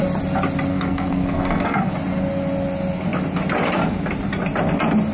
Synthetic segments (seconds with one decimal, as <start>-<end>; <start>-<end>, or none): 0.7-1.9